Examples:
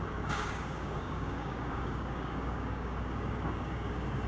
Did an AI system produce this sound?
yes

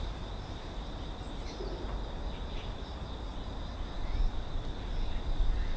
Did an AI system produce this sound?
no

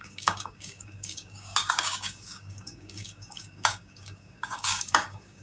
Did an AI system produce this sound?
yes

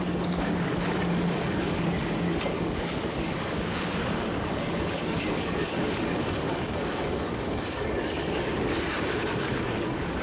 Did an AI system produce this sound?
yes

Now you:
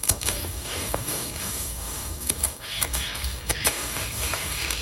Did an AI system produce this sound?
yes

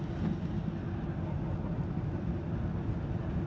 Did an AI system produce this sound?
no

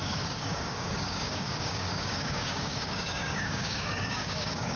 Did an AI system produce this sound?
yes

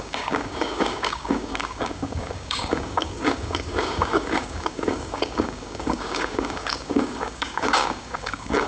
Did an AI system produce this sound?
yes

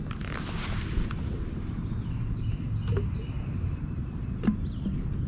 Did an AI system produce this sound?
no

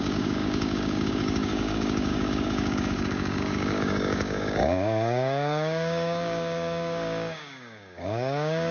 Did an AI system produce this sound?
yes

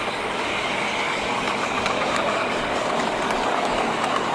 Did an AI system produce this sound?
yes